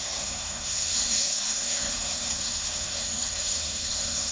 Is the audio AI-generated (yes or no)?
yes